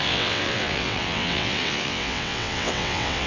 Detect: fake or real fake